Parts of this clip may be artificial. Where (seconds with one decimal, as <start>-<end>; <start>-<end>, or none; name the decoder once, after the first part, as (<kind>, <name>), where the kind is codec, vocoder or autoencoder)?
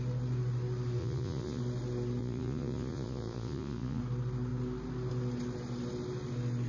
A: 1.0-1.6 (vocoder, Vocos); 2.2-4.0